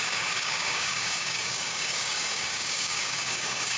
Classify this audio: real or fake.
fake